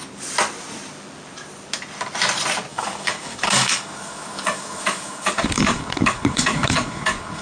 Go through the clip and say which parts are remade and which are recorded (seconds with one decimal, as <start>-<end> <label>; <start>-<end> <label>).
0.0-2.7 recorded; 2.7-7.4 remade